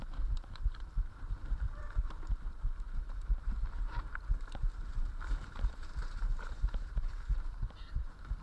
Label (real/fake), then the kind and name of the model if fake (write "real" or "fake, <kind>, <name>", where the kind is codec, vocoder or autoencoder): fake, vocoder, BigVGAN v2